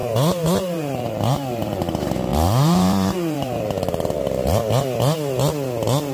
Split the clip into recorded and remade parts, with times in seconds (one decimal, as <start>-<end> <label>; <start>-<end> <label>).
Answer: 0.0-1.8 remade; 1.8-2.3 recorded; 2.3-4.2 remade; 4.2-6.1 recorded